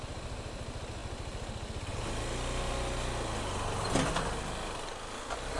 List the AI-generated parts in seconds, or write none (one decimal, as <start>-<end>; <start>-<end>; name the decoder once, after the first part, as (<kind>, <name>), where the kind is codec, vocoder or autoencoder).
none